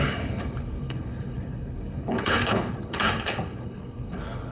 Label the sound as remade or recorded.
remade